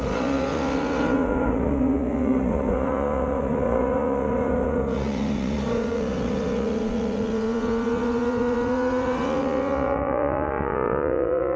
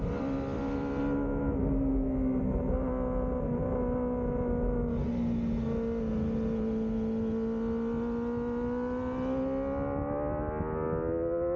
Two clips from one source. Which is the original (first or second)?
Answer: second